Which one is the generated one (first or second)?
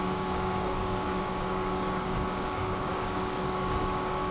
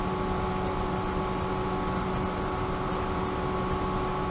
first